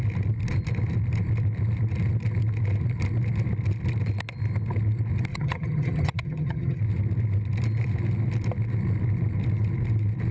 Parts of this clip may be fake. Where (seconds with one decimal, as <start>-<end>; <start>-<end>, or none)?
5.3-6.8